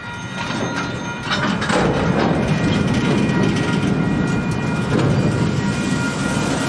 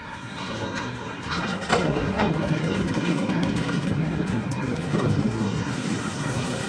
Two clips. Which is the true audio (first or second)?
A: first